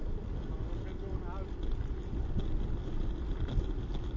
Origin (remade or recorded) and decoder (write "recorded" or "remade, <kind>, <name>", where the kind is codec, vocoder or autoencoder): recorded